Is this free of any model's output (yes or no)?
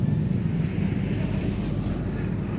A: yes